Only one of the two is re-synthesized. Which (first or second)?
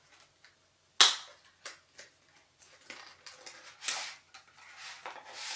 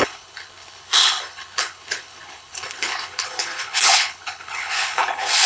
second